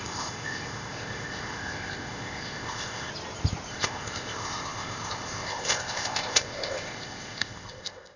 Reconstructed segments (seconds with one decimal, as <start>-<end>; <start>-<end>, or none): 0.0-3.1; 3.7-8.2